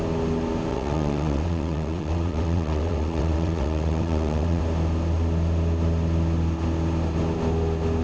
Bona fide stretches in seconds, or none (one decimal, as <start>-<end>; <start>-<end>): 0.0-0.7; 4.6-8.0